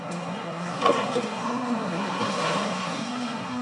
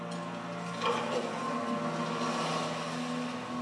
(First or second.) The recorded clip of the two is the second